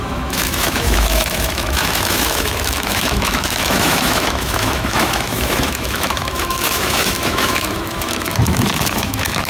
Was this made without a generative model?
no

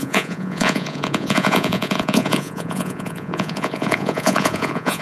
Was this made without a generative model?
no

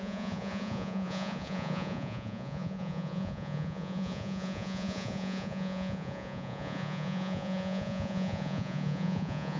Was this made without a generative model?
no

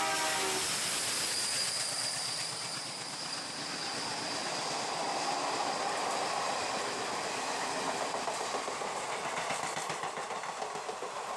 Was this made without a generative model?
yes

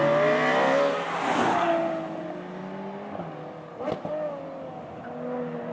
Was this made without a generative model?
yes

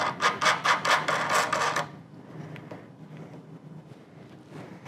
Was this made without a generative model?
yes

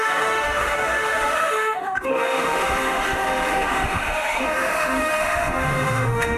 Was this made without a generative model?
no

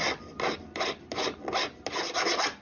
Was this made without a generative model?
yes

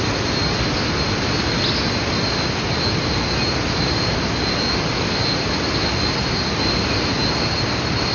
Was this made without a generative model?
yes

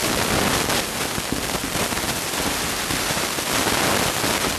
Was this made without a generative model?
yes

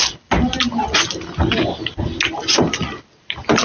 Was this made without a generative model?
yes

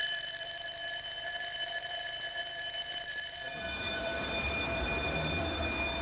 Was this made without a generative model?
no